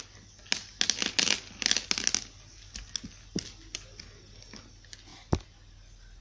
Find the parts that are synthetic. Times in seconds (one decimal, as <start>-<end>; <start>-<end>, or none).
none